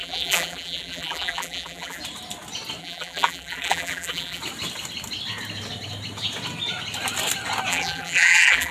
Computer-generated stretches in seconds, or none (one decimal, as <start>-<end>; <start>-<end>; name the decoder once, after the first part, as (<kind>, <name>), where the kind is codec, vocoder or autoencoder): 0.0-2.0 (vocoder, BigVGAN v2); 2.8-4.4; 7.7-8.7